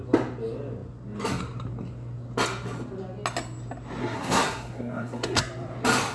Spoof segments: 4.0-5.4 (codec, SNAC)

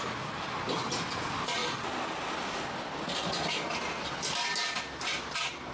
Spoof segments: none

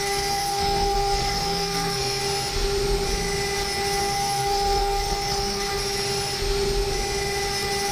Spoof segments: 0.0-2.2 (codec, SNAC); 4.0-5.7

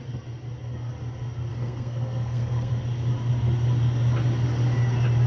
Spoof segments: 1.5-2.7 (codec, SNAC)

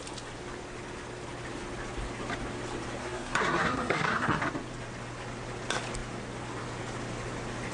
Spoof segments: 3.0-4.4 (codec, SNAC)

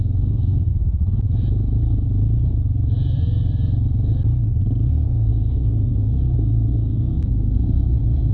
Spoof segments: 0.0-0.7 (codec, SNAC); 4.9-8.3